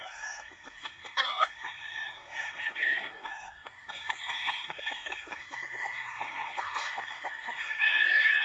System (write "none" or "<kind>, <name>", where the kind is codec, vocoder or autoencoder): codec, SNAC